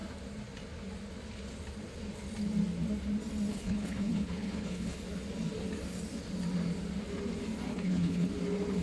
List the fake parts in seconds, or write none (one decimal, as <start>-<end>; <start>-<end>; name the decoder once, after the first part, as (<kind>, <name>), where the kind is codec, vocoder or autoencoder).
3.5-5.0 (codec, HILCodec); 7.7-8.3